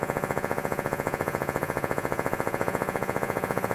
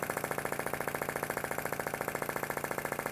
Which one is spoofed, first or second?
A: first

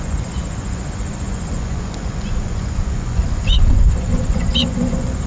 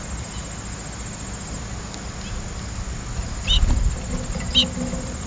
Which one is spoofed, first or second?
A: first